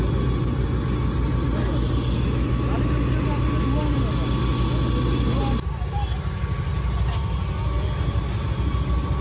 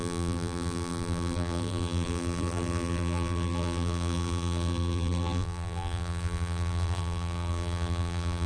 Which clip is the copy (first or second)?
second